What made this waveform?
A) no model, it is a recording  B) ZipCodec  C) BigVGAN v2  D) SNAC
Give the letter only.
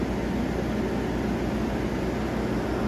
A